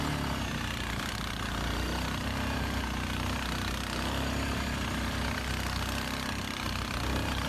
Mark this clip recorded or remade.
recorded